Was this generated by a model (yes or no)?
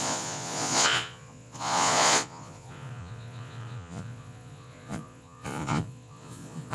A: yes